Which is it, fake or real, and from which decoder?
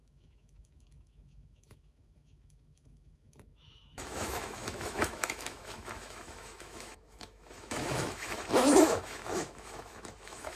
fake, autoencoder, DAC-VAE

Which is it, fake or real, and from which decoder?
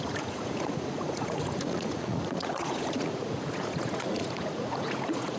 fake, vocoder, Vocos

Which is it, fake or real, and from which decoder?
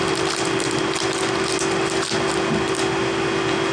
real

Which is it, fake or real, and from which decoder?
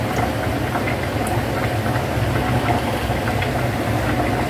real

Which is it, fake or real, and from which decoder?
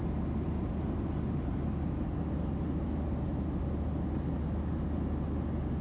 real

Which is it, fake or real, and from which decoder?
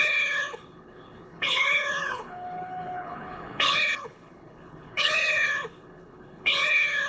fake, codec, HILCodec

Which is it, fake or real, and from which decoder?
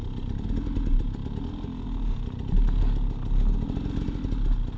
real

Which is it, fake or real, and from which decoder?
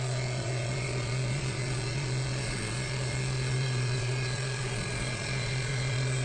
fake, vocoder, Vocos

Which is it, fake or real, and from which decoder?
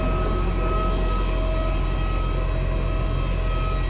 real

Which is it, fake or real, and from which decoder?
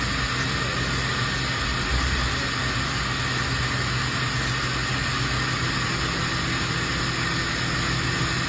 real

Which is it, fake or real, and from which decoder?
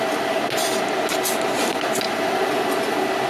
real